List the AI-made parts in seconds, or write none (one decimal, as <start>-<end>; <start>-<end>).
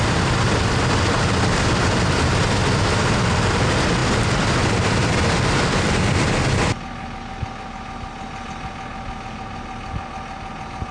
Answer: none